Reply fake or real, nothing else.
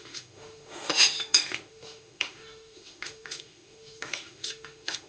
fake